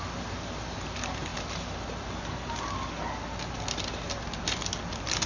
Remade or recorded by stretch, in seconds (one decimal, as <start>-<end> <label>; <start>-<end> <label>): 0.0-5.3 recorded

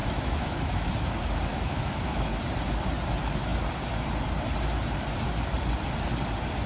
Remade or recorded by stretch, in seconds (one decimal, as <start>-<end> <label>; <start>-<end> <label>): 0.0-0.9 remade; 0.9-1.5 recorded; 1.5-2.4 remade; 2.4-6.7 recorded

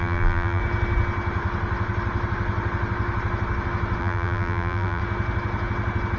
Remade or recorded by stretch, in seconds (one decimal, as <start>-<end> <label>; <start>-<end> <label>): 0.0-0.6 remade; 0.6-4.0 recorded; 4.0-5.0 remade; 5.0-6.2 recorded

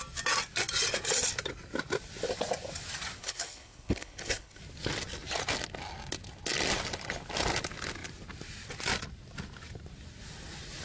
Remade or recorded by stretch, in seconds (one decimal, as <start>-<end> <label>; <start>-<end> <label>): 0.0-3.2 recorded; 3.2-4.6 remade; 4.6-10.8 recorded

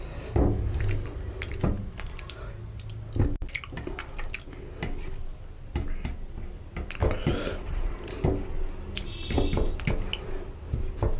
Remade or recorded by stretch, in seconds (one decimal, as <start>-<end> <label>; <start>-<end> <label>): 0.0-7.0 recorded; 7.0-8.2 remade; 8.2-11.2 recorded

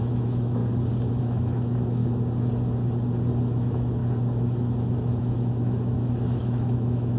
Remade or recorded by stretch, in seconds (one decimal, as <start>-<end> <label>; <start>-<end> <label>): 0.0-0.6 remade; 0.6-1.2 recorded; 1.2-2.0 remade; 2.0-3.4 recorded; 3.4-4.0 remade; 4.0-5.2 recorded; 5.2-7.2 remade